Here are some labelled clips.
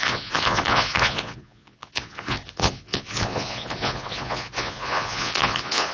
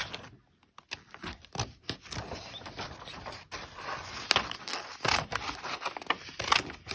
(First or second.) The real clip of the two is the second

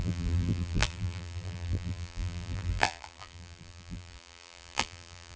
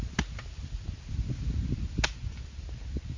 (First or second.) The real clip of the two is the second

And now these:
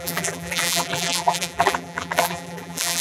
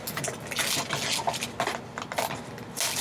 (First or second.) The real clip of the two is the second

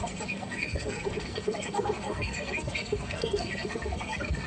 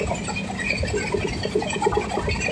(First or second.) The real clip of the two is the second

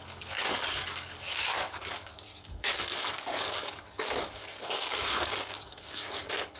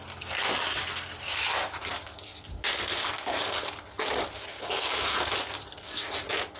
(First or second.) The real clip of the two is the second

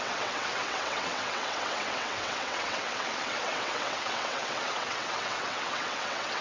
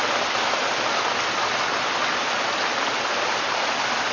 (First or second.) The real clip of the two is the second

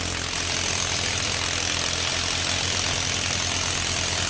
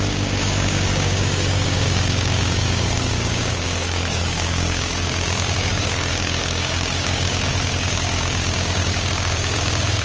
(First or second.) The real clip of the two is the first